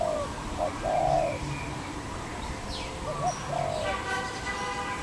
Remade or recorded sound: recorded